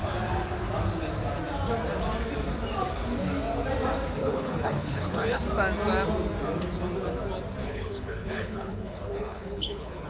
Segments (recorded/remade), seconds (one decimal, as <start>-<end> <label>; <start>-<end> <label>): 0.0-4.2 recorded; 4.2-5.4 remade; 5.4-7.6 recorded; 7.6-10.1 remade